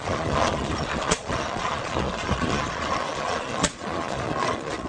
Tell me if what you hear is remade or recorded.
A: remade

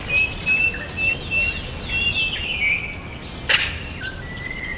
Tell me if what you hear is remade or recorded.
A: recorded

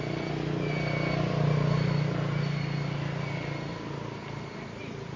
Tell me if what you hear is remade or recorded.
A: recorded